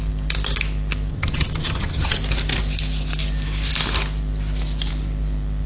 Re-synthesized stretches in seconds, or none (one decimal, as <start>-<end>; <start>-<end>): 1.1-2.2